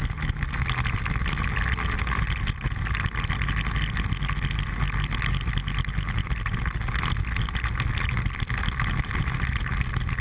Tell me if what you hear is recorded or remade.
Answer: recorded